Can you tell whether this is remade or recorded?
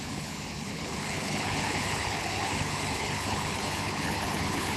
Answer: remade